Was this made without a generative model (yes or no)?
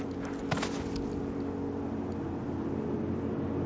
yes